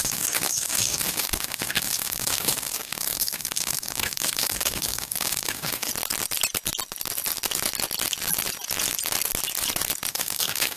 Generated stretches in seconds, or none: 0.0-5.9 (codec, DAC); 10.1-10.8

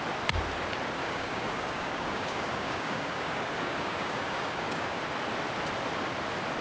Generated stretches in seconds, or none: 1.0-5.0 (codec, DAC)

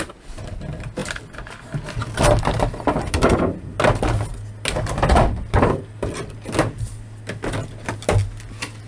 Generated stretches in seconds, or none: none

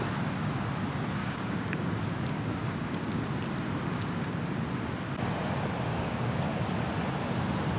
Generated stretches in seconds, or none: 1.2-3.2 (codec, DAC); 5.9-6.7

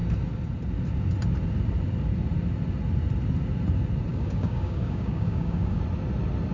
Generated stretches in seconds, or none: 4.1-5.8 (codec, DAC)

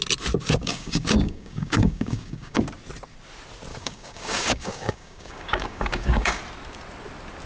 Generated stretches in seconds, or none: 0.6-2.6 (codec, DAC); 3.7-6.4